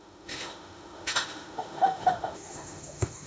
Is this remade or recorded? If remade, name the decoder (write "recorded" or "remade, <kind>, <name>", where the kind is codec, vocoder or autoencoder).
remade, autoencoder, DAC-VAE